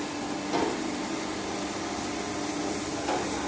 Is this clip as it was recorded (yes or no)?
yes